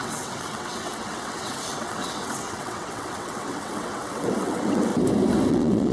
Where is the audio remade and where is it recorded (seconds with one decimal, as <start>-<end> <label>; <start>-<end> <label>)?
0.0-4.9 remade; 4.9-5.5 recorded; 5.5-5.9 remade